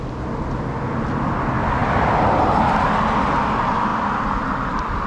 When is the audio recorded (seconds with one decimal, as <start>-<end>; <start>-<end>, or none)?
0.0-5.1